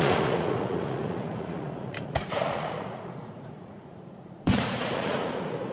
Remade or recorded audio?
remade